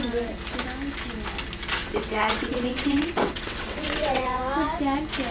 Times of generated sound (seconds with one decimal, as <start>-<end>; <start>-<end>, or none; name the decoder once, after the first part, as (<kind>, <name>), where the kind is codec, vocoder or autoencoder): 1.8-4.4 (vocoder, WaveNeXt)